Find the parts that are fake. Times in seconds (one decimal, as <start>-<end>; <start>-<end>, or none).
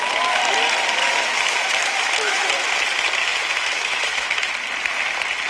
1.0-2.5; 3.2-4.5